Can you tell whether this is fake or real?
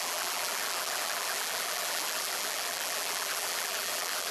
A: fake